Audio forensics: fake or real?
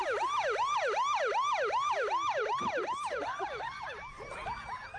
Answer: real